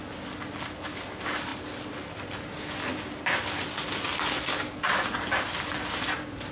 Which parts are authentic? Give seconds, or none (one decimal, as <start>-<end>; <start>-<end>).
0.0-6.5